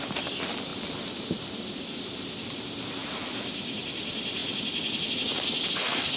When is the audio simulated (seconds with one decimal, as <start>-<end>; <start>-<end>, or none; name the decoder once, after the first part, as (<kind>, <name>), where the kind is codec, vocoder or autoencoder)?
none